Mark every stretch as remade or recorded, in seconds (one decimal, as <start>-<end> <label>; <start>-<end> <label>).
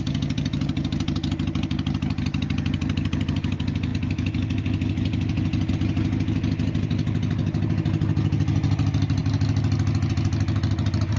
0.0-11.2 recorded